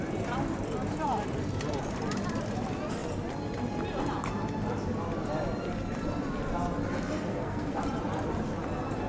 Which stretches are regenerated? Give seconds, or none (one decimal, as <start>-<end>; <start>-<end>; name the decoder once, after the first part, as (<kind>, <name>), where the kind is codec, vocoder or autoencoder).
7.3-7.8 (codec, SNAC)